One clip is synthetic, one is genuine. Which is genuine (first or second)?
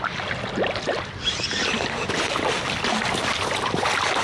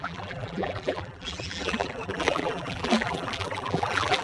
first